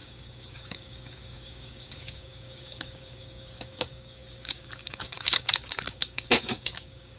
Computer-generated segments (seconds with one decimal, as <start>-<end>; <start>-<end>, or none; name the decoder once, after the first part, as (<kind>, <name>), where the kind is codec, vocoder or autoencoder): 0.0-7.2 (codec, DAC)